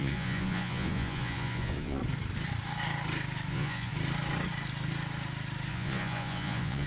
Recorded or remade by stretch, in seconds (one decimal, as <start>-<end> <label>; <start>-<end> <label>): 0.0-2.0 remade; 2.0-3.5 recorded; 3.5-3.9 remade; 3.9-5.7 recorded; 5.7-6.9 remade